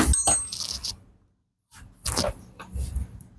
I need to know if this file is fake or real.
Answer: real